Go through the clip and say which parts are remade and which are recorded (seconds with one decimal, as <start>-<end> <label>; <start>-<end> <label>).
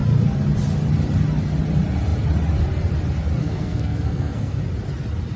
0.0-3.4 recorded; 3.4-4.6 remade; 4.6-5.4 recorded